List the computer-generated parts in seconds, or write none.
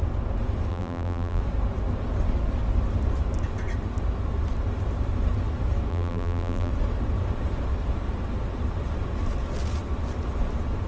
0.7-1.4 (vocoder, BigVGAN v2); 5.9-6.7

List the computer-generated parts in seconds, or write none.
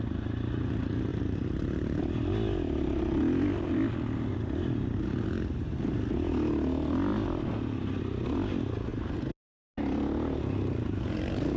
1.1-5.0 (vocoder, BigVGAN v2); 7.1-8.0; 8.9-9.7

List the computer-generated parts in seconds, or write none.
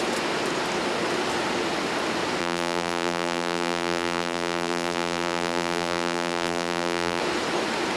2.4-7.2 (vocoder, BigVGAN v2)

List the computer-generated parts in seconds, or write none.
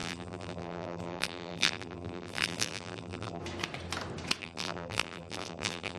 0.0-3.4 (vocoder, BigVGAN v2); 4.4-6.0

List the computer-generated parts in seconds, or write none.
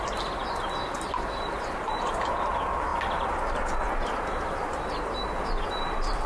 0.0-2.9 (vocoder, BigVGAN v2)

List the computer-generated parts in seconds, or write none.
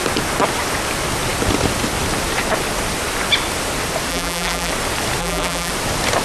4.1-4.7 (vocoder, BigVGAN v2); 5.2-5.7